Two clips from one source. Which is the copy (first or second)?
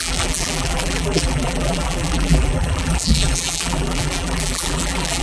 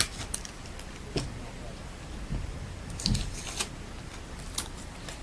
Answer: first